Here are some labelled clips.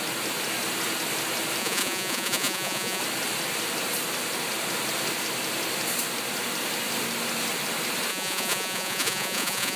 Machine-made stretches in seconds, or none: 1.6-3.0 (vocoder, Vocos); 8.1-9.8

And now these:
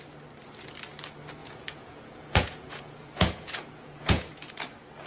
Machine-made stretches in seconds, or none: 1.4-4.5 (vocoder, Vocos)

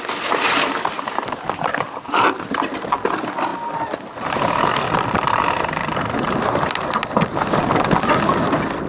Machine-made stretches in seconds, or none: none